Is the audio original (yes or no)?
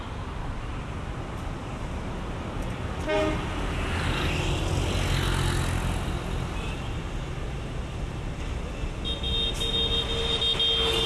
yes